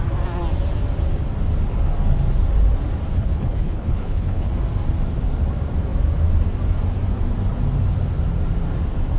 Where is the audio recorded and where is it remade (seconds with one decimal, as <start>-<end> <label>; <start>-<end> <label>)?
0.0-3.1 recorded; 3.1-4.5 remade; 4.5-9.2 recorded